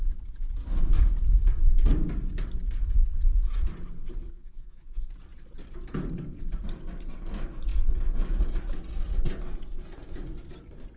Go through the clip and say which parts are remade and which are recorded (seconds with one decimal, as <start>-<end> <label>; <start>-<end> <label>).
0.0-4.3 recorded; 4.3-5.1 remade; 5.1-11.0 recorded

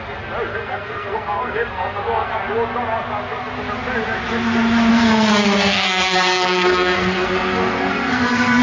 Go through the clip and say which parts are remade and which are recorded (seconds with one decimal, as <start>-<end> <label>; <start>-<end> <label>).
0.0-0.5 recorded; 0.5-2.3 remade; 2.3-4.9 recorded; 4.9-8.6 remade

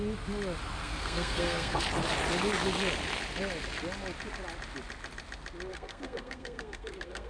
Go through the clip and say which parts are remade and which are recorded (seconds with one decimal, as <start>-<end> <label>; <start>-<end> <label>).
0.0-0.8 recorded; 0.8-1.8 remade; 1.8-5.7 recorded; 5.7-7.3 remade

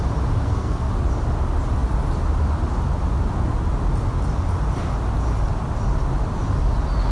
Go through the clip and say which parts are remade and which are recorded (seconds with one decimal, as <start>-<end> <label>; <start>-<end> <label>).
0.0-0.4 recorded; 0.4-0.9 remade; 0.9-7.1 recorded

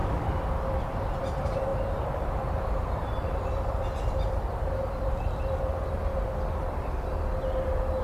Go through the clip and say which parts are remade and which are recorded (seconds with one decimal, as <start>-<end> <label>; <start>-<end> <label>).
0.0-8.0 recorded

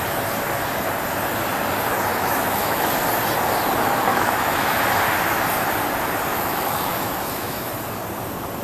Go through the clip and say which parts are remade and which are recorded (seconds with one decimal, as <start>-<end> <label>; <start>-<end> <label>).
0.0-2.1 recorded; 2.1-3.0 remade; 3.0-4.1 recorded; 4.1-4.8 remade; 4.8-6.3 recorded; 6.3-7.7 remade; 7.7-8.6 recorded

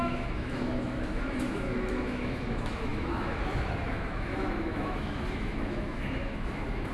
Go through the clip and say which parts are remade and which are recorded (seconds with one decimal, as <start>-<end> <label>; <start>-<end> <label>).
0.0-6.9 remade